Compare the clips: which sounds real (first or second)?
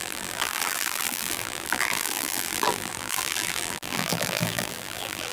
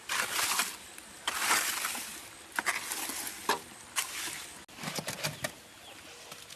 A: second